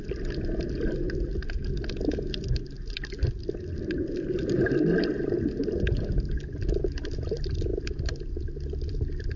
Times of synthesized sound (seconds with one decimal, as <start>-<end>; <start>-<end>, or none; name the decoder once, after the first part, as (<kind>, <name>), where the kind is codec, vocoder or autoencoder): none